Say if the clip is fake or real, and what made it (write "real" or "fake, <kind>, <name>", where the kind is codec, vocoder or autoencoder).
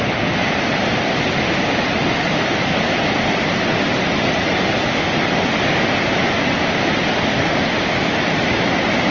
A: real